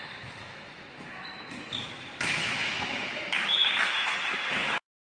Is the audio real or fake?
fake